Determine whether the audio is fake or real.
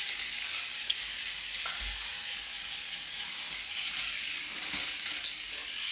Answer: fake